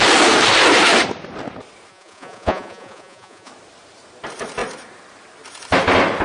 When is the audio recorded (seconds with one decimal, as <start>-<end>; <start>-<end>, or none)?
0.0-1.9; 3.5-6.2